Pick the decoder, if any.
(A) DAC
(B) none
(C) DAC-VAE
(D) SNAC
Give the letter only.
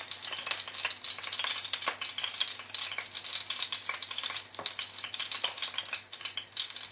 B